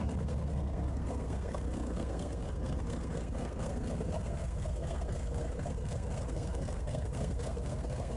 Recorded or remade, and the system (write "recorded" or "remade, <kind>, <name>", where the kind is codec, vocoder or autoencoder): remade, codec, SNAC